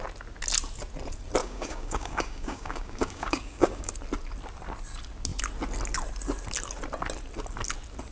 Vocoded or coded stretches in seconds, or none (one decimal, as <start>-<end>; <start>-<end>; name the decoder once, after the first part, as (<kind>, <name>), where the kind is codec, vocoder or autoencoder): 1.4-3.9 (codec, DAC)